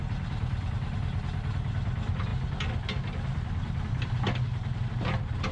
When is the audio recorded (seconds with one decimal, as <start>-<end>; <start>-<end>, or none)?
0.0-5.5